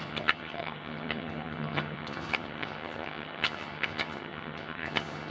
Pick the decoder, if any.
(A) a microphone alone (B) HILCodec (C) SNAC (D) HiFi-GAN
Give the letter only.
D